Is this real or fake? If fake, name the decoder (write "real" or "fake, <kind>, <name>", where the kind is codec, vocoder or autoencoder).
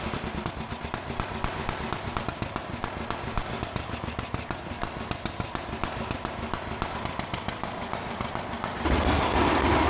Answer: real